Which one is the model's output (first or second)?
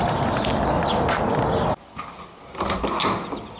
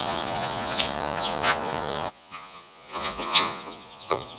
second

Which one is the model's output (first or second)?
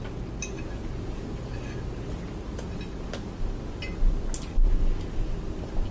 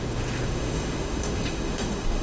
second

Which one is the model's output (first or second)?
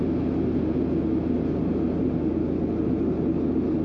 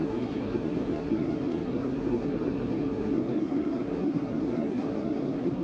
second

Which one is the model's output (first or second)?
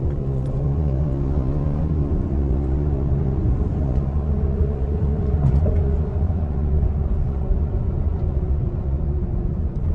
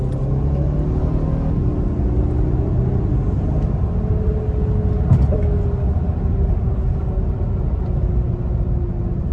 first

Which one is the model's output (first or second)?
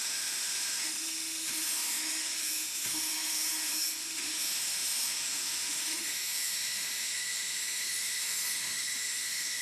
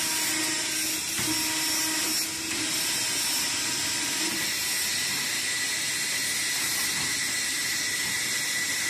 first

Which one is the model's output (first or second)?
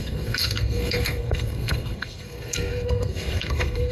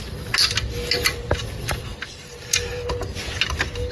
first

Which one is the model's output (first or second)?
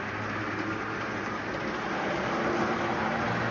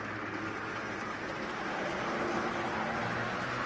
first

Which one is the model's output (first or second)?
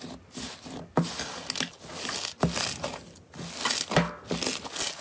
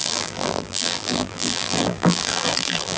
second